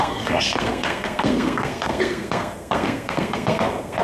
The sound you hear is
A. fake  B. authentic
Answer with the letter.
A